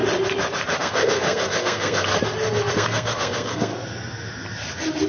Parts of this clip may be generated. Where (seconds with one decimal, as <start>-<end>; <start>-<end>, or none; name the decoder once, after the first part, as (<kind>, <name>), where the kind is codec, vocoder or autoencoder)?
0.8-2.1 (codec, SNAC); 2.7-3.7